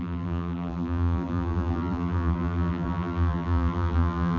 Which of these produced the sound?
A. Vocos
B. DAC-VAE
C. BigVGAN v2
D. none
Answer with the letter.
C